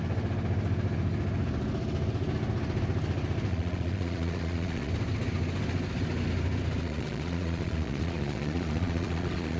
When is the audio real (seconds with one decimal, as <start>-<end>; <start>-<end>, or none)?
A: 0.0-3.5; 4.9-6.8